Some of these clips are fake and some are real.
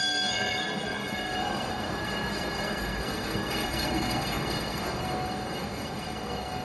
fake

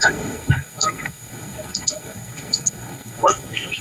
fake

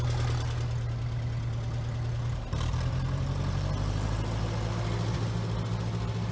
real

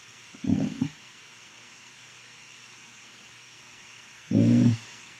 fake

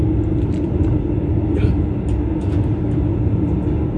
real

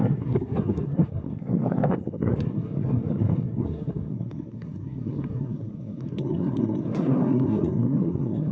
fake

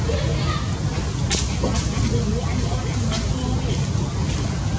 real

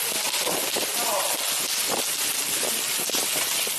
real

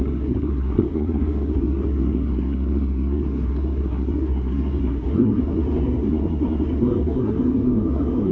fake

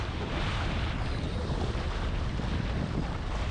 real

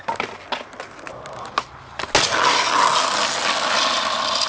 real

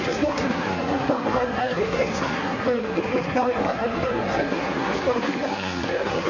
fake